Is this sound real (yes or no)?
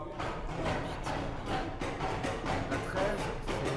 no